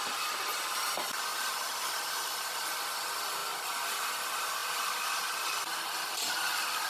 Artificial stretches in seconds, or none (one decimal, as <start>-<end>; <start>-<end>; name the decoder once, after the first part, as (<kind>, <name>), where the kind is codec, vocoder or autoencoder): 1.3-2.7 (vocoder, BigVGAN v2)